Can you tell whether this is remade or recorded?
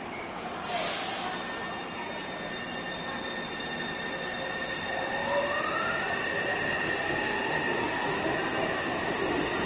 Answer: recorded